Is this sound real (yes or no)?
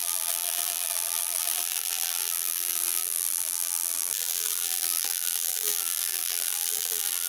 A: no